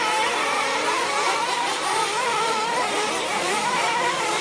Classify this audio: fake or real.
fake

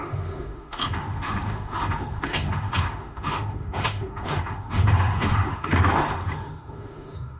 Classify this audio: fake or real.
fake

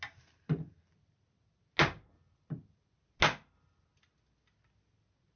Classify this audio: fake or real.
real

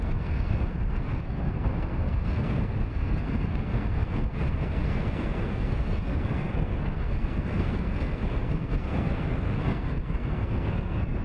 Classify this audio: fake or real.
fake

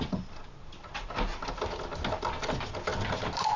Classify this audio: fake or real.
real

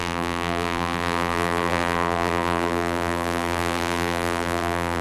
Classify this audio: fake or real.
fake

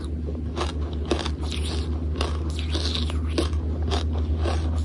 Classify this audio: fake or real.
real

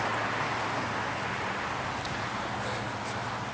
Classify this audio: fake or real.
real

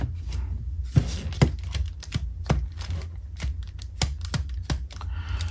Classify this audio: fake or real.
real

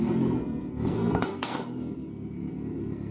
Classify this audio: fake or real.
fake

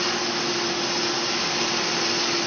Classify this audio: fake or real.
real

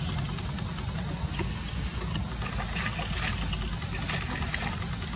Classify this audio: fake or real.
real